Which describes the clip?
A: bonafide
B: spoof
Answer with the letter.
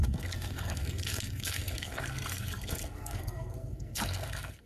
B